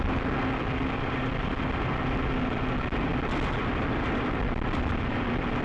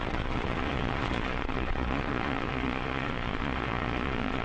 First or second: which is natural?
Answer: first